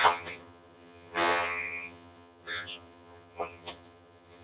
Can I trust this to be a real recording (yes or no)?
no